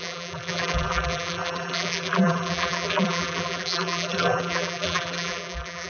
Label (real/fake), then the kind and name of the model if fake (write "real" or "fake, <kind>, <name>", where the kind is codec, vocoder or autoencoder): fake, vocoder, BigVGAN v2